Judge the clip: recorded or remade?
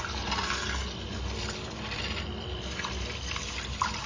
recorded